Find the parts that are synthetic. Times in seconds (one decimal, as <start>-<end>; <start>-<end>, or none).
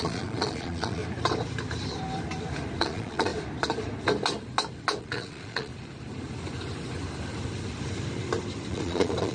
0.0-1.0; 2.8-3.3; 5.0-5.7; 8.7-9.3